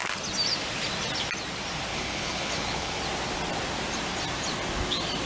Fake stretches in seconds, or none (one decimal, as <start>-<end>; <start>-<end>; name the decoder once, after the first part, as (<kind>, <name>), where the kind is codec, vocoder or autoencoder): 1.9-3.0 (codec, HILCodec)